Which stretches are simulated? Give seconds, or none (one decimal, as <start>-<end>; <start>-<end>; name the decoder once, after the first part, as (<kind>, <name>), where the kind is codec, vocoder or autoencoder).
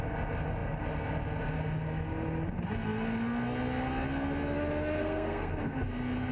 5.0-5.5 (codec, SNAC)